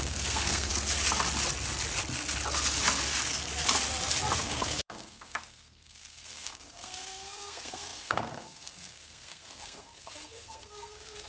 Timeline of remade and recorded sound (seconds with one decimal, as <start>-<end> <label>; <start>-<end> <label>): 0.0-0.7 remade; 0.7-4.4 recorded; 4.4-11.3 remade